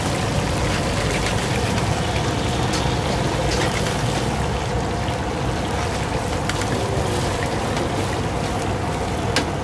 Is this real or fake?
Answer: real